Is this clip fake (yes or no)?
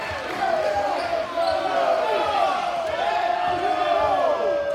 no